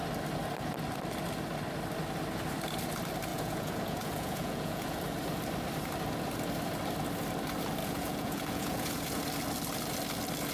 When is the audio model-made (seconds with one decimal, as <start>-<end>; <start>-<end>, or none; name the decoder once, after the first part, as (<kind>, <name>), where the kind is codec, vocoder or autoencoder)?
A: 3.3-5.0 (vocoder, Vocos); 7.8-9.2